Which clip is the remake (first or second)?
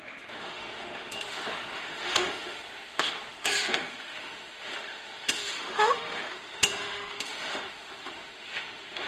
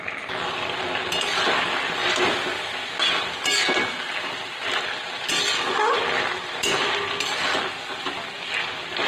first